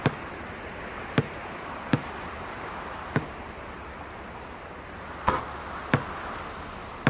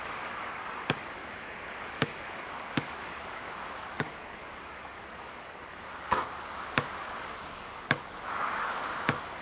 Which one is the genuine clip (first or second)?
first